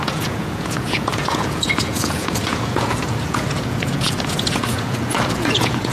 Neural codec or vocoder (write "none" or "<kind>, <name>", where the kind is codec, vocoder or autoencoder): vocoder, Vocos